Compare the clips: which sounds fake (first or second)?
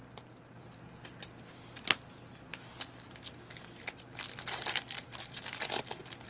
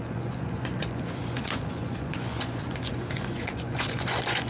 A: second